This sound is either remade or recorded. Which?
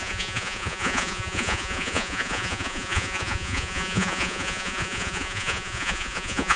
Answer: remade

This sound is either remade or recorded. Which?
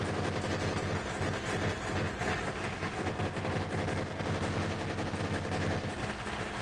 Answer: recorded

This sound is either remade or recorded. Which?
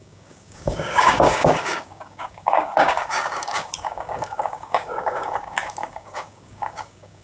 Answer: remade